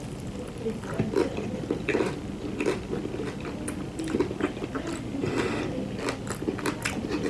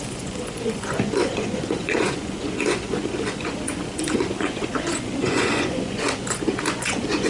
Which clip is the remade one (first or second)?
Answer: second